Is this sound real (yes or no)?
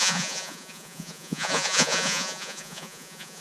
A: no